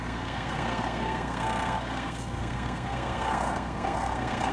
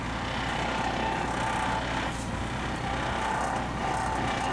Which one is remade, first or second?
first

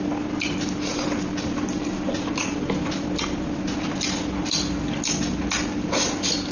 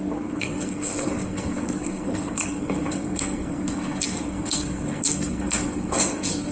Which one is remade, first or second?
second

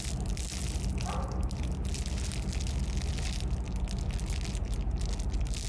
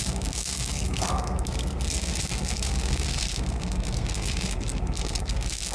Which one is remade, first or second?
second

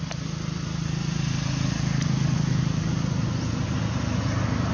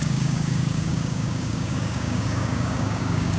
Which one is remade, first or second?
second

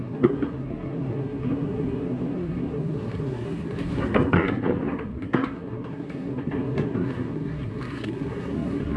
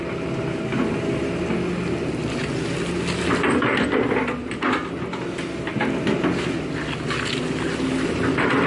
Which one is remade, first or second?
first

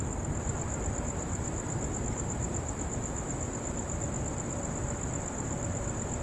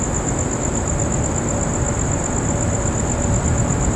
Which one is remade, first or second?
first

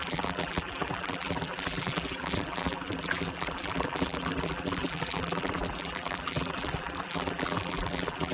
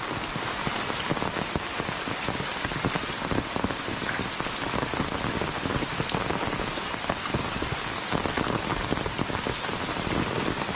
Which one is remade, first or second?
first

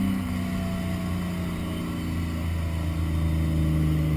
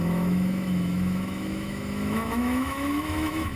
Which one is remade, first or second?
second